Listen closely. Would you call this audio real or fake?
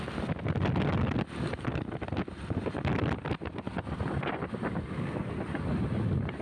real